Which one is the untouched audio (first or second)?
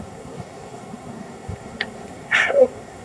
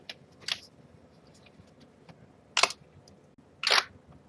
second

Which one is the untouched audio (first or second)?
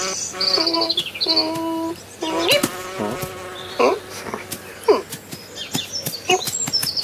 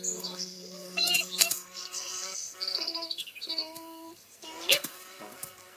first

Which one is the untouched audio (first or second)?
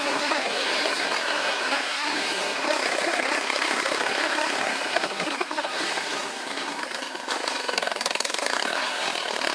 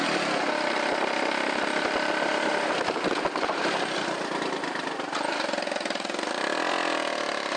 second